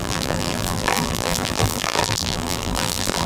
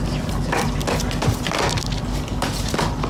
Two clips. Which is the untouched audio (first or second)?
second